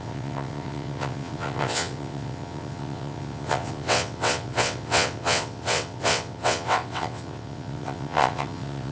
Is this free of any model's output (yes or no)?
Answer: no